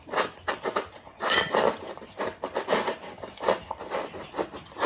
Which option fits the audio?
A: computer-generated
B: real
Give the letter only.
A